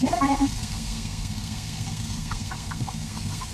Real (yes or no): no